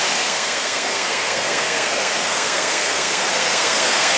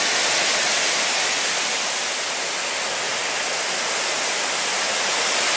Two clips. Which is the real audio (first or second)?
second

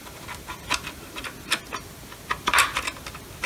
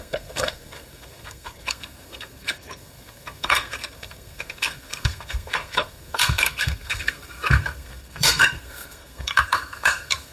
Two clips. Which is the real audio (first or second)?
first